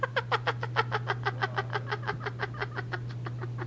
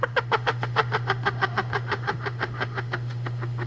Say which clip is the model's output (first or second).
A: second